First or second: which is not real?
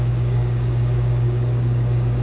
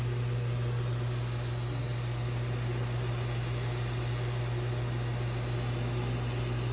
first